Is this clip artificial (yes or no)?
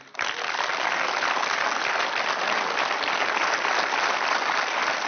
yes